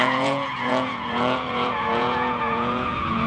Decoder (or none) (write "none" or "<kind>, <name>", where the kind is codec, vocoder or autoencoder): vocoder, Vocos